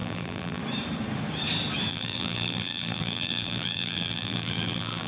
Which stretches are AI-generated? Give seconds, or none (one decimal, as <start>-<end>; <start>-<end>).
0.0-0.6; 1.9-5.1